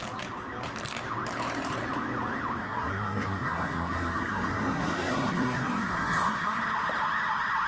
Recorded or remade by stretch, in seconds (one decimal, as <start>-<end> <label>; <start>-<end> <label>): 0.0-2.6 recorded; 2.6-6.6 remade; 6.6-7.7 recorded